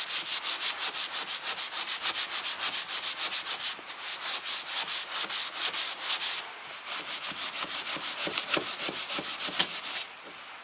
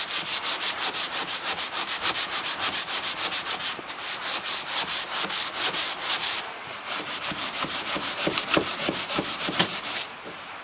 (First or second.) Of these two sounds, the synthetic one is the second